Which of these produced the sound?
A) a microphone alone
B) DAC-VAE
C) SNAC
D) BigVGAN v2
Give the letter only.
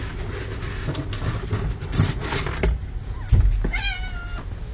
A